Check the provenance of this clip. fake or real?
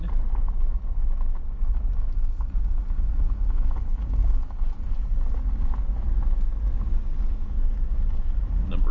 real